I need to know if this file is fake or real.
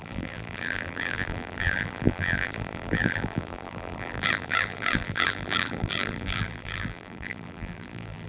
fake